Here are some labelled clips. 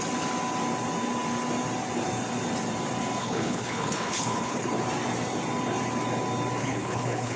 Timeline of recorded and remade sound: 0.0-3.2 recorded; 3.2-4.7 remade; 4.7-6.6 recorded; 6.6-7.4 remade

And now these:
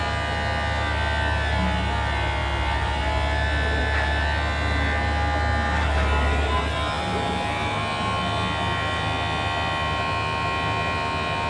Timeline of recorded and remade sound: 0.0-11.5 recorded

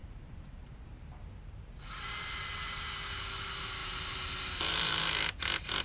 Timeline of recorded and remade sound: 0.0-2.4 remade; 2.4-3.8 recorded; 3.8-5.1 remade; 5.1-5.8 recorded

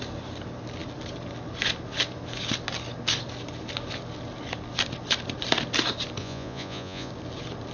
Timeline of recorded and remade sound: 0.0-6.2 recorded; 6.2-7.1 remade; 7.1-7.7 recorded